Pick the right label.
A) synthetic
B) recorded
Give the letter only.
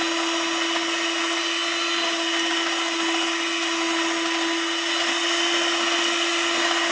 B